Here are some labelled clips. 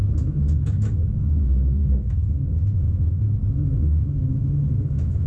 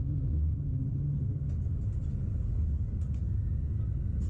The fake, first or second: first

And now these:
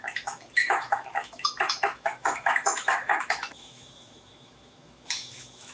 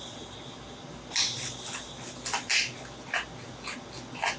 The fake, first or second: first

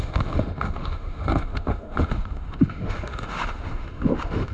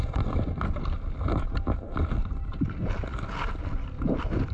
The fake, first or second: first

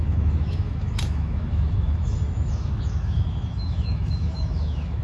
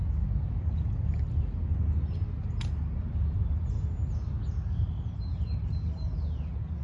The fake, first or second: first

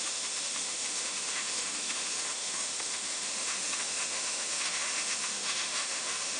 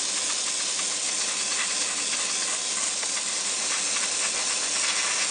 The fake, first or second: first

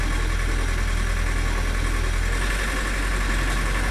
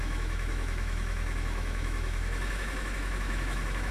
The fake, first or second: second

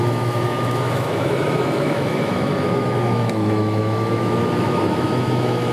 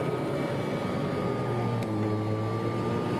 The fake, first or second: first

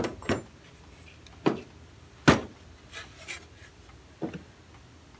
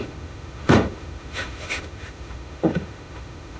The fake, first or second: second